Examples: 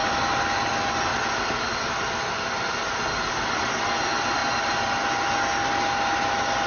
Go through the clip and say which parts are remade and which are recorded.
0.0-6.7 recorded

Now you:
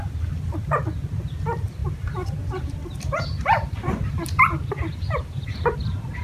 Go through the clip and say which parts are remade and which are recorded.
0.0-1.8 recorded; 1.8-5.5 remade; 5.5-6.2 recorded

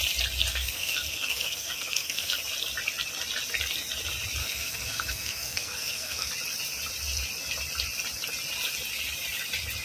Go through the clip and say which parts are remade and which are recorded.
0.0-0.5 recorded; 0.5-2.4 remade; 2.4-4.4 recorded; 4.4-6.3 remade; 6.3-9.8 recorded

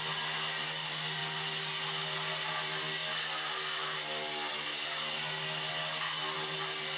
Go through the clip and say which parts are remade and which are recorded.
0.0-7.0 recorded

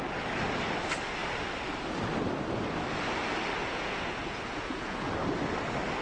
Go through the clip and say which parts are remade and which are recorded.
0.0-3.6 recorded; 3.6-5.1 remade; 5.1-6.0 recorded

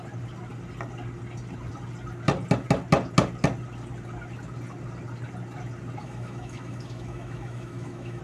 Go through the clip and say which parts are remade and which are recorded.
0.0-6.0 recorded; 6.0-8.2 remade

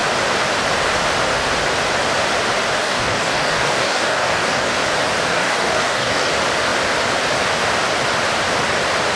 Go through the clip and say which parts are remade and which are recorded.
0.0-2.8 recorded; 2.8-4.7 remade; 4.7-5.3 recorded; 5.3-6.3 remade; 6.3-9.2 recorded

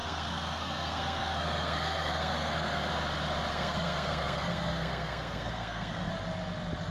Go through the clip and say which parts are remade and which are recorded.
0.0-2.9 remade; 2.9-3.5 recorded; 3.5-6.1 remade; 6.1-6.9 recorded